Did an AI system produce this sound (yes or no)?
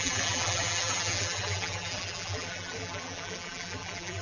yes